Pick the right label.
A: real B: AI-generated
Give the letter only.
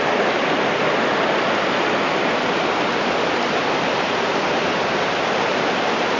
A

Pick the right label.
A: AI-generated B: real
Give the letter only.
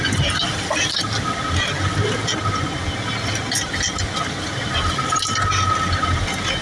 B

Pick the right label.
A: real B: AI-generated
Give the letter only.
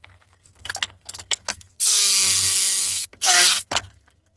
B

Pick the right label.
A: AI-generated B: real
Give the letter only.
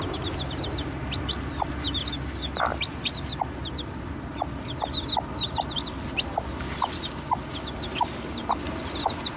B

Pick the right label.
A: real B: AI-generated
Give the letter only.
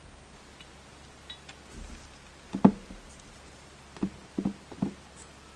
A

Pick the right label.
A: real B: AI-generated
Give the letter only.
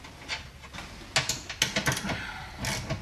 A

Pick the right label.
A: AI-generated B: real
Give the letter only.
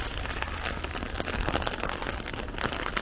B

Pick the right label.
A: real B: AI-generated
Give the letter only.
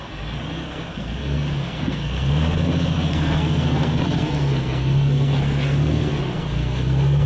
B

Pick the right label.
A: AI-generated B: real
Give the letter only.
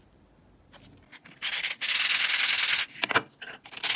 B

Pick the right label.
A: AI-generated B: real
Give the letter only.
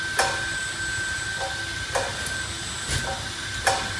B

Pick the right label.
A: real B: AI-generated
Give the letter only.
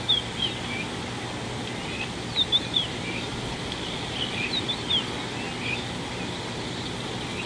A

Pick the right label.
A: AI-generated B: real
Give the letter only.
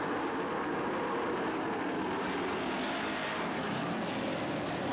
B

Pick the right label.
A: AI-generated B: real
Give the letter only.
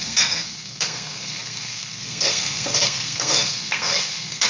A